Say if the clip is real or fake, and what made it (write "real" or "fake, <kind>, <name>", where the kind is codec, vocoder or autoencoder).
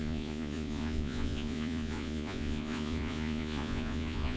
fake, vocoder, Vocos